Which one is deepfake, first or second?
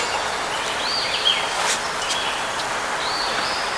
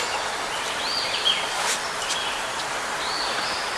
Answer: second